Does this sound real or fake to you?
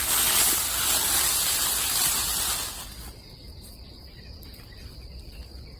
real